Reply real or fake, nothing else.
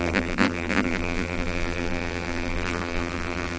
fake